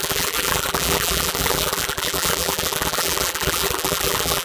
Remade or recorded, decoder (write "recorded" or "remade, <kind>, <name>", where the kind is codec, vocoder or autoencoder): remade, vocoder, BigVGAN v2